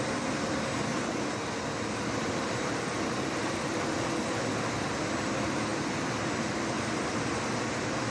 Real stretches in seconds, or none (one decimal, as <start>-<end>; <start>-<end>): 0.0-0.9; 4.4-8.1